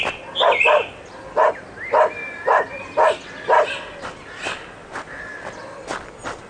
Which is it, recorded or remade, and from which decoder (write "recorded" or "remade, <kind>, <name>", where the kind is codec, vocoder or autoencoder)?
recorded